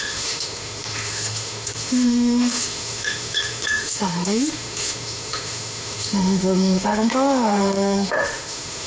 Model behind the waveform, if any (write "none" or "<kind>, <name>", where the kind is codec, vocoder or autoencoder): autoencoder, DAC-VAE